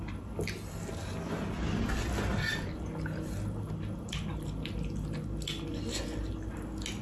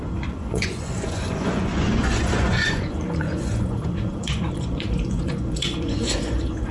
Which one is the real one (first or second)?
first